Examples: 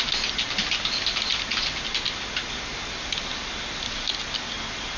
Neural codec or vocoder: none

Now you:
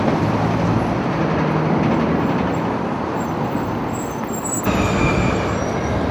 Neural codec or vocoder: none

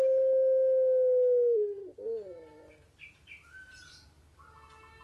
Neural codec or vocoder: none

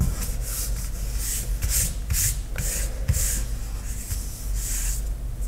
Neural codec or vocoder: none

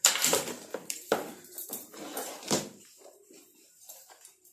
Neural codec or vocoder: vocoder, BigVGAN v2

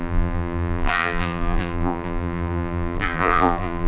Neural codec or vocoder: vocoder, BigVGAN v2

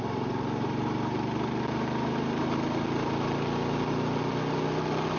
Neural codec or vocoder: none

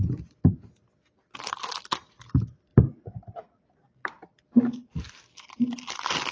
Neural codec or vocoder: none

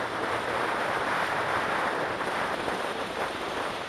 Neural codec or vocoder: vocoder, BigVGAN v2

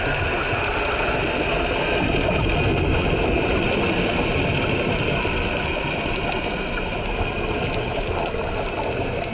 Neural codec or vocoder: none